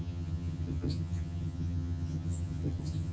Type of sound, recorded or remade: remade